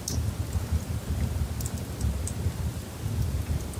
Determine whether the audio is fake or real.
real